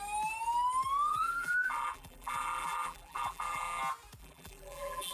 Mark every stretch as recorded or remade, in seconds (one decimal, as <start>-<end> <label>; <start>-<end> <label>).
0.0-1.1 recorded; 1.1-3.8 remade; 3.8-4.2 recorded; 4.2-5.1 remade